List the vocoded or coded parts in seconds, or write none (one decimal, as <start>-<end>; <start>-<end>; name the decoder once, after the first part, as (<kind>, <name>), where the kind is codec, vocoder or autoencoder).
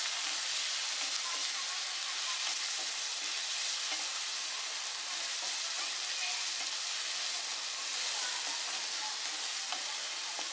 none